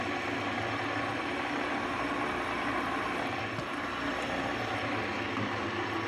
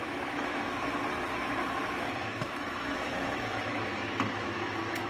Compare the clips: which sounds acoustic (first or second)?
first